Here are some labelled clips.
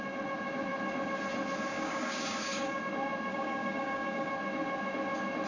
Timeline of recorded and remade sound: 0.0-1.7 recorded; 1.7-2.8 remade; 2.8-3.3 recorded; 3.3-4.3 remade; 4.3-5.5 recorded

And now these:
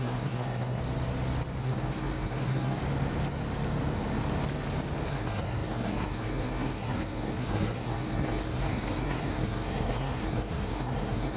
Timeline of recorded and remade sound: 0.0-0.8 remade; 0.8-1.6 recorded; 1.6-2.8 remade; 2.8-5.1 recorded; 5.1-11.4 remade

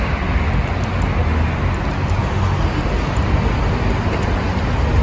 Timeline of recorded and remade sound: 0.0-5.0 recorded

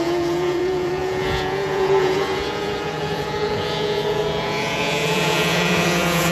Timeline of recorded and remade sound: 0.0-6.3 remade

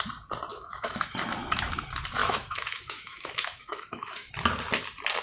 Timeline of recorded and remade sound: 0.0-0.5 recorded; 0.5-1.1 remade; 1.1-2.2 recorded; 2.2-4.3 remade; 4.3-5.2 recorded